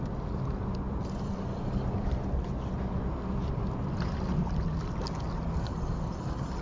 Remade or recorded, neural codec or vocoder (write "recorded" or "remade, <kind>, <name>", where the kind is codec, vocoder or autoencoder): recorded